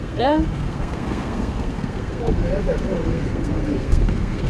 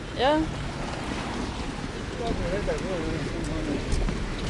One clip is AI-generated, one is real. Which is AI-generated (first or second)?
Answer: first